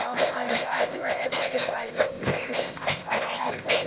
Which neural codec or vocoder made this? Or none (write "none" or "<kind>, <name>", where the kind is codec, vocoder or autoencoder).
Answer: codec, ZipCodec